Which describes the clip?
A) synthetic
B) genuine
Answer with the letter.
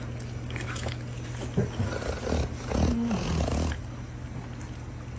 B